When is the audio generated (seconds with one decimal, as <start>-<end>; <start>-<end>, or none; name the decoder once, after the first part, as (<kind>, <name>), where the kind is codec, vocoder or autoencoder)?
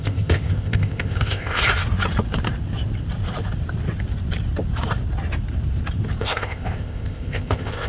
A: 0.0-1.6 (codec, ZipCodec); 6.2-7.9